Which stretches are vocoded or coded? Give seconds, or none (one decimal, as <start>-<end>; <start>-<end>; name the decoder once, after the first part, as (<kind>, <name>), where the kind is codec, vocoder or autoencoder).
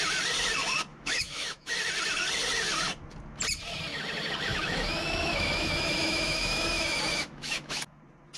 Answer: 0.9-1.7 (autoencoder, DAC-VAE); 4.5-8.0